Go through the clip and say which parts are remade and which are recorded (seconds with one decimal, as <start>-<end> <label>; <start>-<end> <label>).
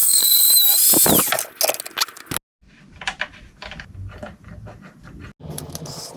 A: 0.0-0.5 remade; 0.5-6.2 recorded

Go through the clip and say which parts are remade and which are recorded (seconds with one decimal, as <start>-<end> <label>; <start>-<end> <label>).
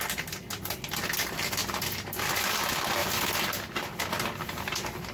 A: 0.0-3.0 recorded; 3.0-3.8 remade; 3.8-5.1 recorded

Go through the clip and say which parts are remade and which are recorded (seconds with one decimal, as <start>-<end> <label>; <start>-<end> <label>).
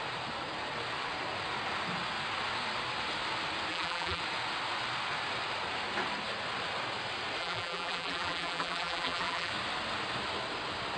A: 0.0-3.7 recorded; 3.7-4.2 remade; 4.2-7.4 recorded; 7.4-9.5 remade; 9.5-11.0 recorded